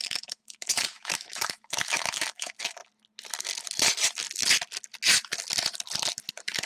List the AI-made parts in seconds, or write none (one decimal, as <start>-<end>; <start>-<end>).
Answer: 0.0-2.8; 6.3-6.7